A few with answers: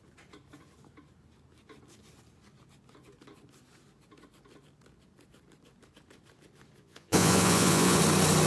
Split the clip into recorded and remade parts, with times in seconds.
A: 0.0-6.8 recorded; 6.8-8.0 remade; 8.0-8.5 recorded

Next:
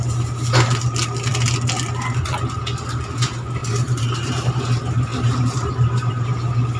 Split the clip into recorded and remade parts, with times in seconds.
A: 0.0-3.6 recorded; 3.6-4.6 remade; 4.6-5.1 recorded; 5.1-6.1 remade; 6.1-6.8 recorded

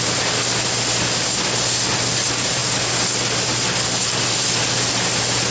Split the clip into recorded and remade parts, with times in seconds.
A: 0.0-5.5 recorded

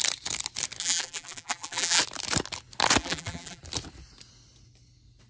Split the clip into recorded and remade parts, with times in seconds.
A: 0.0-0.8 recorded; 0.8-2.0 remade; 2.0-3.0 recorded; 3.0-3.6 remade; 3.6-5.3 recorded